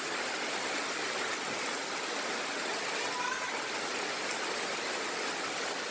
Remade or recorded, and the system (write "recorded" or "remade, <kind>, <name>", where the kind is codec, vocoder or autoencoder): recorded